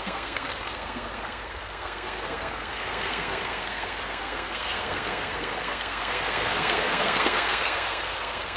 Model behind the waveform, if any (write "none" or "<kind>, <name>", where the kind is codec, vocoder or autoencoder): codec, SNAC